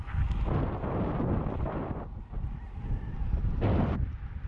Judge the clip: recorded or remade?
recorded